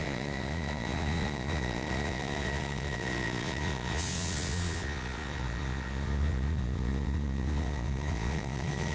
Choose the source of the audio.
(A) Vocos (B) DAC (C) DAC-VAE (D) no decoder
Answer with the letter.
A